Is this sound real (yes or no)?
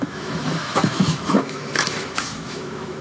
no